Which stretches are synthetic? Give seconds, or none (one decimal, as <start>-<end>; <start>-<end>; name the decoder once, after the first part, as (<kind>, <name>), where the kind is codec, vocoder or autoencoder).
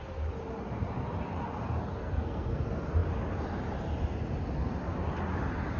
2.0-2.6 (codec, SNAC)